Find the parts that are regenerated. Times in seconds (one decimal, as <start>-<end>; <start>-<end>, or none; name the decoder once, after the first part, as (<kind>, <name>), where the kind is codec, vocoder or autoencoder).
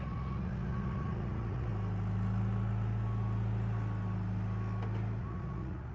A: 0.0-1.7 (vocoder, Vocos); 5.2-5.9